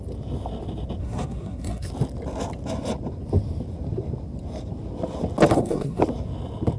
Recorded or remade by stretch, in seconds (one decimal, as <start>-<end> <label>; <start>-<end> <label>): 0.0-1.0 recorded; 1.0-1.9 remade; 1.9-5.5 recorded; 5.5-6.0 remade; 6.0-6.8 recorded